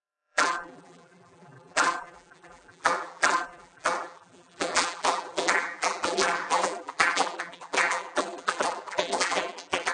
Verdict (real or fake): fake